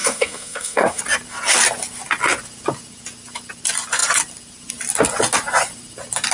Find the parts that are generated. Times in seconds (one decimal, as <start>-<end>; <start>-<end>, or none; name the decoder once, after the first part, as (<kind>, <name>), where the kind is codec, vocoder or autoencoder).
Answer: 0.0-1.0 (codec, SNAC)